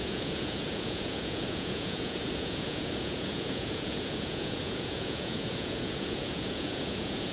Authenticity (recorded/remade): remade